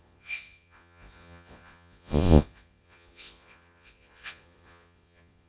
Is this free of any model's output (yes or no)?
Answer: no